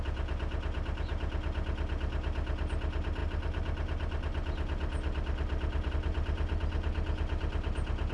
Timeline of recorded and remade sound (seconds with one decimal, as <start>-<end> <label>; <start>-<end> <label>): 0.0-8.1 recorded

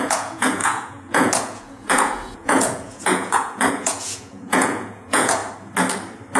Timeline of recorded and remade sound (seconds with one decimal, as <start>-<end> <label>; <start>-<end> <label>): 0.0-5.4 remade; 5.4-6.4 recorded

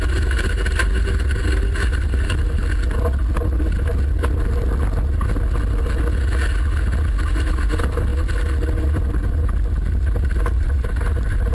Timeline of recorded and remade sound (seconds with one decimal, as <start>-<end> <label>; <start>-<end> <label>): 0.0-2.6 remade; 2.6-7.3 recorded; 7.3-8.1 remade; 8.1-8.8 recorded; 8.8-11.5 remade

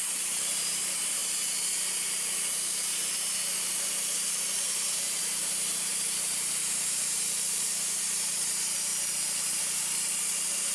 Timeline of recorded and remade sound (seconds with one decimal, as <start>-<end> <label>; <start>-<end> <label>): 0.0-8.9 remade; 8.9-9.6 recorded; 9.6-10.7 remade

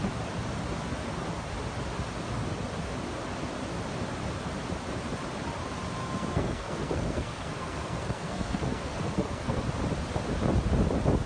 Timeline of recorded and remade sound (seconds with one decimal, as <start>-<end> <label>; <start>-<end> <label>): 0.0-6.0 recorded; 6.0-9.6 remade; 9.6-11.3 recorded